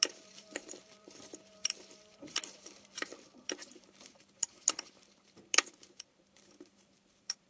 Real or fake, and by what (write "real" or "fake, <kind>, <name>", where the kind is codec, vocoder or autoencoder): fake, vocoder, BigVGAN v2